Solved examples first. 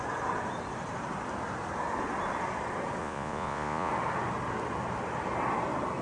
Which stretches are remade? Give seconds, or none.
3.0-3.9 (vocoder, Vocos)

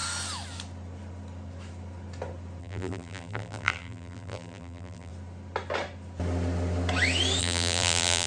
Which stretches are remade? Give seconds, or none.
2.6-5.1 (vocoder, BigVGAN v2); 7.4-8.3

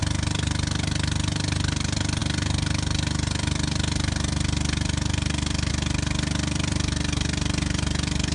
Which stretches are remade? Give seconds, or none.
none

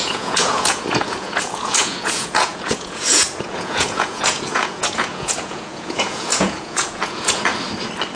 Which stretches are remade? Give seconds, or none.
0.0-7.5 (vocoder, Vocos)